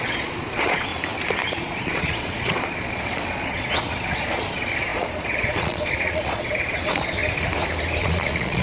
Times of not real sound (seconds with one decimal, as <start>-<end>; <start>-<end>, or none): 0.0-0.9; 1.5-7.2; 8.0-8.6